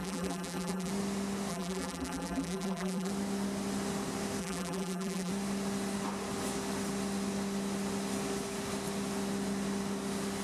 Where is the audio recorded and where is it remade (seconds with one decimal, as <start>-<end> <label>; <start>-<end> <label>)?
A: 0.0-0.9 remade; 0.9-1.5 recorded; 1.5-3.1 remade; 3.1-4.4 recorded; 4.4-5.3 remade; 5.3-10.4 recorded